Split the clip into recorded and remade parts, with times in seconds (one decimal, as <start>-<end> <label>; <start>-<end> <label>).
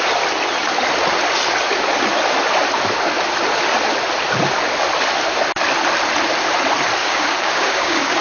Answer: 0.0-7.0 recorded; 7.0-8.2 remade